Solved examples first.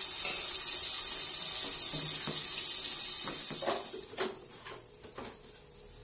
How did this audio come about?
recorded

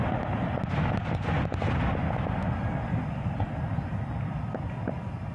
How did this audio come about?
recorded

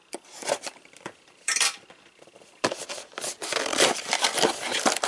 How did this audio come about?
remade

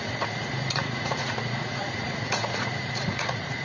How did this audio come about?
remade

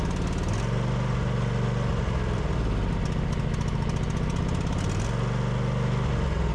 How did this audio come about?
recorded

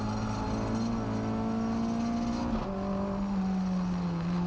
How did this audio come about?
recorded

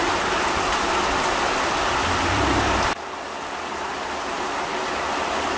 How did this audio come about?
recorded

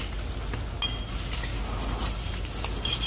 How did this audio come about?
recorded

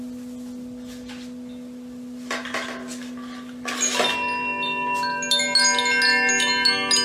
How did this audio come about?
recorded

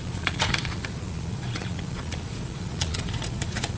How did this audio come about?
remade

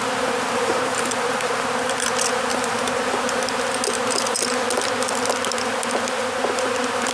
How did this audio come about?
recorded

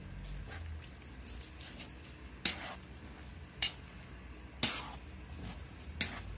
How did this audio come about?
recorded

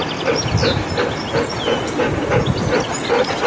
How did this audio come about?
recorded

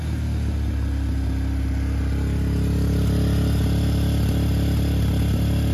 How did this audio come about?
recorded